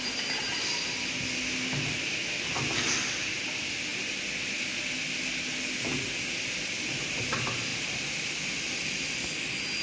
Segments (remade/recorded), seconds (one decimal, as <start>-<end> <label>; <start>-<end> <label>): 0.0-7.7 recorded; 7.7-8.5 remade; 8.5-9.8 recorded